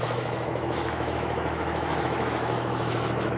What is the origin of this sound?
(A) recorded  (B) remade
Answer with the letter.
B